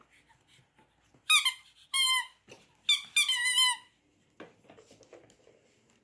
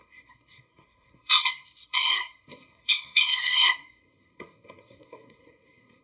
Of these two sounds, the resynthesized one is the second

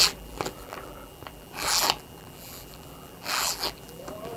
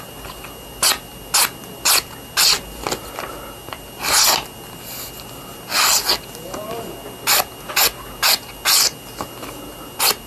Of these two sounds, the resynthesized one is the first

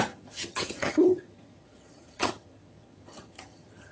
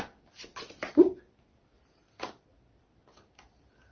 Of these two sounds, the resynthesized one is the first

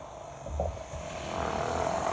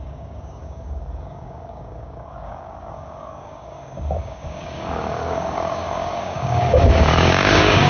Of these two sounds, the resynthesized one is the second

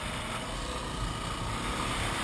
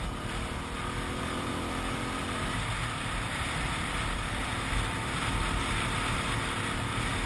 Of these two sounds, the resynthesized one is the second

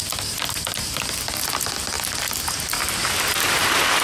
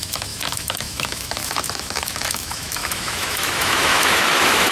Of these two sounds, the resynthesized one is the second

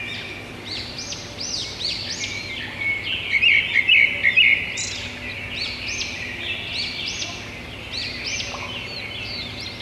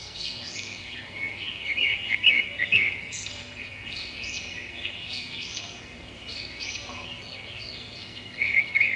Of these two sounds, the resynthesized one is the second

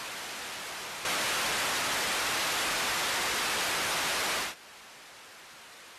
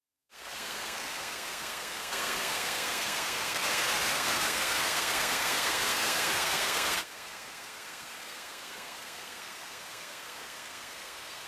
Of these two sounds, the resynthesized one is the second